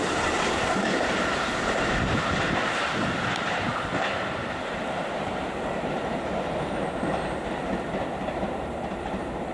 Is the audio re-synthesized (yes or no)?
yes